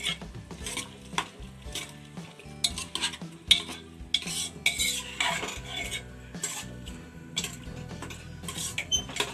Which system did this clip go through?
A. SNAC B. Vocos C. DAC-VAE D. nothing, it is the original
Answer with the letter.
D